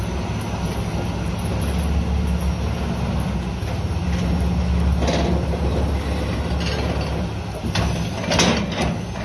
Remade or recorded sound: recorded